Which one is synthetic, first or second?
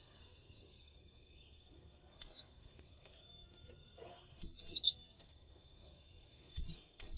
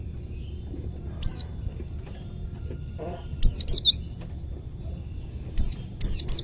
first